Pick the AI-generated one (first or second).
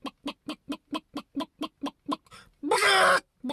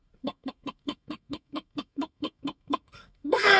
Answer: second